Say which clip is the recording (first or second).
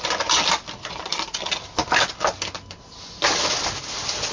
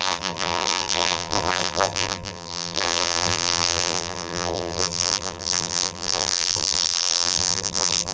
first